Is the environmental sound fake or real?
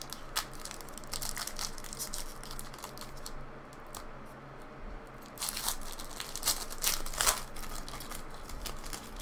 real